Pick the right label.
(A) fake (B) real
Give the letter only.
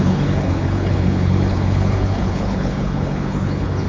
A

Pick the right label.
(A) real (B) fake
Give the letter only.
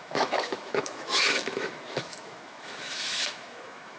B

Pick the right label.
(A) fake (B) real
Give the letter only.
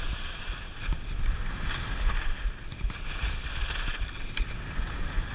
B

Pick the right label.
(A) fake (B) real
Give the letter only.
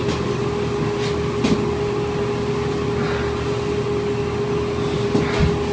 B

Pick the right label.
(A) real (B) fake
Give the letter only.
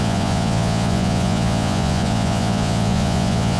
B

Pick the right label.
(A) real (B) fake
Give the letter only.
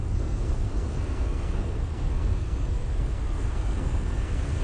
B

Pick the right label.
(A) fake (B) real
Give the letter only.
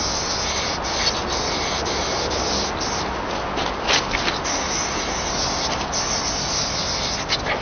B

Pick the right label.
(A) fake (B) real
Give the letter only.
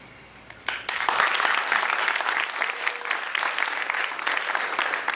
B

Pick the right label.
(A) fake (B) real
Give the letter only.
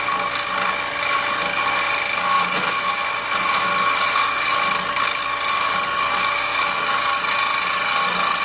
B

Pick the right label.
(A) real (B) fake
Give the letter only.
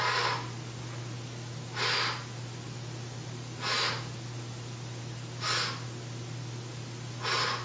A